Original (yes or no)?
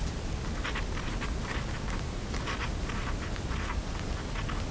yes